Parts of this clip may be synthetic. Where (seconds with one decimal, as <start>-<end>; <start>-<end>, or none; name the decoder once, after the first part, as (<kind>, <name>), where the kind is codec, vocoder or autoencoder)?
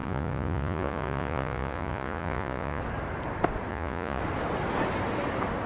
0.0-2.8 (vocoder, Vocos); 3.7-4.2